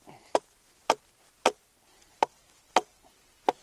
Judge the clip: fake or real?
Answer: real